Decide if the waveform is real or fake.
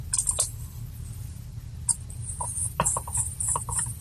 fake